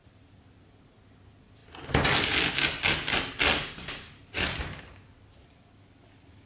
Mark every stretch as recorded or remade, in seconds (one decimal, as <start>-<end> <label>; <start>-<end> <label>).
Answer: 0.0-6.5 recorded